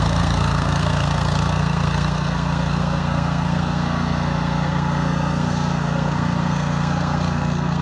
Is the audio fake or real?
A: fake